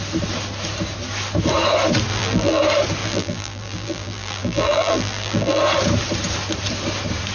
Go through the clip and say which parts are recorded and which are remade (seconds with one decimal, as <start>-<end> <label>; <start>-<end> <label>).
0.0-2.1 recorded; 2.1-2.6 remade; 2.6-3.0 recorded; 3.0-5.6 remade; 5.6-7.3 recorded